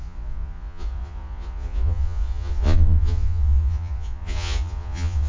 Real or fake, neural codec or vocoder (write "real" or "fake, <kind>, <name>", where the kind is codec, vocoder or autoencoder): fake, vocoder, Vocos